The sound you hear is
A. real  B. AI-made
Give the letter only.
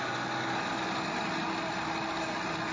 A